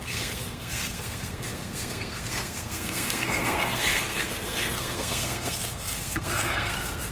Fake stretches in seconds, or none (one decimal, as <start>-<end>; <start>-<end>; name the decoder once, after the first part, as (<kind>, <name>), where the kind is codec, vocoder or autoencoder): 0.0-7.1 (codec, SNAC)